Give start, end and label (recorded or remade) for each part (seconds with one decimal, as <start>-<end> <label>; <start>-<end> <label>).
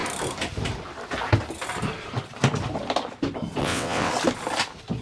0.0-3.6 recorded; 3.6-4.1 remade; 4.1-5.0 recorded